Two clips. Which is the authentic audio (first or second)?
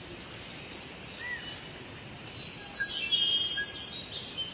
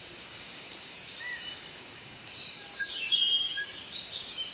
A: first